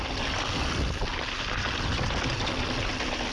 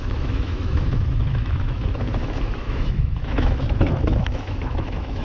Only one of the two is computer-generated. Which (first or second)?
second